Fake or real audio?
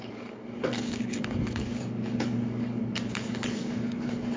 fake